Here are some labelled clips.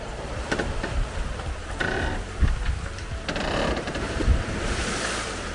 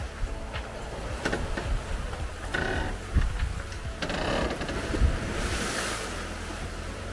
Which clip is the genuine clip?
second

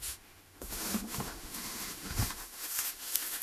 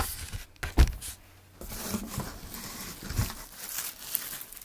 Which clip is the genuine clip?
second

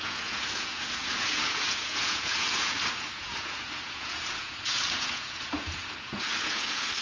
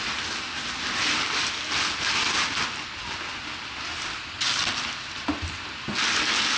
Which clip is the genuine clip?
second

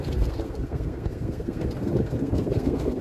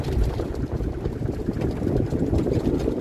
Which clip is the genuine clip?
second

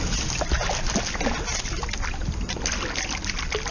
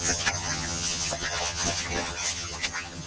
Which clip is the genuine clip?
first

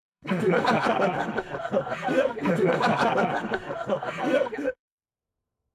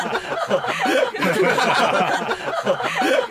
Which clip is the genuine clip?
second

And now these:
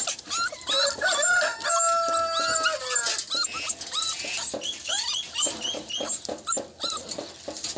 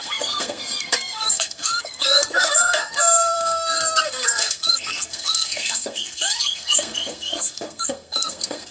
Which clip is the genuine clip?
first